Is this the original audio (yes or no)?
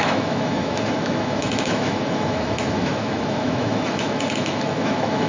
no